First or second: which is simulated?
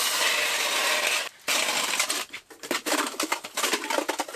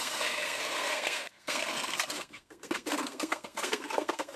second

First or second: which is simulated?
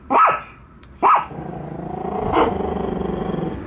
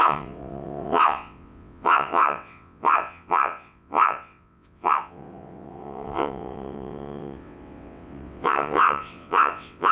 second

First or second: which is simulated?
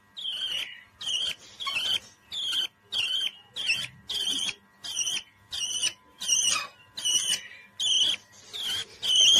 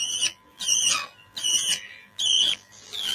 second